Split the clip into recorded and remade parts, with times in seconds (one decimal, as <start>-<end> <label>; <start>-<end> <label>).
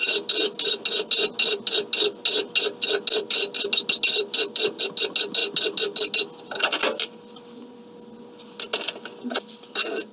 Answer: 0.0-10.1 recorded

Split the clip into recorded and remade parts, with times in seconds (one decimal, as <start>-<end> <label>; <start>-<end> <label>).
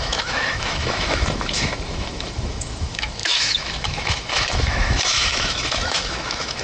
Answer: 0.0-6.6 remade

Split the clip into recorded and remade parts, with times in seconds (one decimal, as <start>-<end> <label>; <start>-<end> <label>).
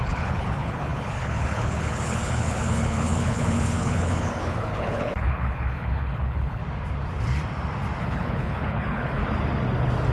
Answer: 0.0-6.6 remade; 6.6-8.0 recorded; 8.0-9.2 remade; 9.2-10.1 recorded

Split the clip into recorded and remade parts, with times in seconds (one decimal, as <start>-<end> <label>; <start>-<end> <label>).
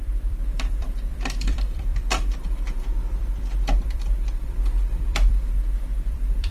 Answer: 0.0-6.5 remade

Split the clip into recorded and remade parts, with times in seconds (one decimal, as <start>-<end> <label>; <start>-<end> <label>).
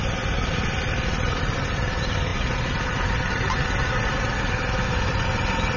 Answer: 0.0-5.8 recorded